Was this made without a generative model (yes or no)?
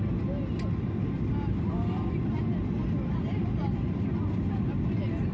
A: yes